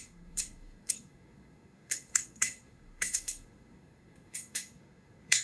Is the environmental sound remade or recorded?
remade